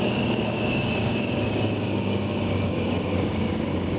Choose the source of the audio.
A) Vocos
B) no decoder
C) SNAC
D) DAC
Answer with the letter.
D